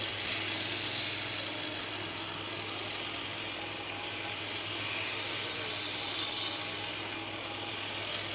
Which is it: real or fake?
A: real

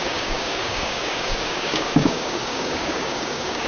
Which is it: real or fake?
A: fake